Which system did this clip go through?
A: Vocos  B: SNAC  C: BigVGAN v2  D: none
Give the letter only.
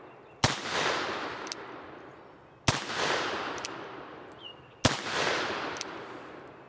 D